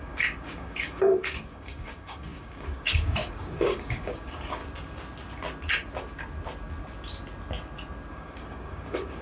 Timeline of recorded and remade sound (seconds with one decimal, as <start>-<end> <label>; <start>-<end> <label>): 0.0-4.6 remade; 4.6-8.1 recorded; 8.1-9.2 remade